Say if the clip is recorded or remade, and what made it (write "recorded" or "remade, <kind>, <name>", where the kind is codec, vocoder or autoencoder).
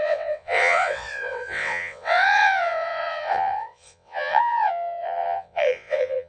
remade, vocoder, WaveNeXt